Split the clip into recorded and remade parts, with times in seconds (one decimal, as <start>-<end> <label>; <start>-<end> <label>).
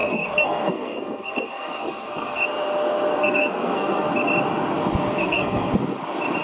0.0-2.4 remade; 2.4-3.1 recorded; 3.1-4.1 remade; 4.1-5.2 recorded; 5.2-5.7 remade; 5.7-6.4 recorded